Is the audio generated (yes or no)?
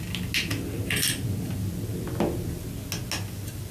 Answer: no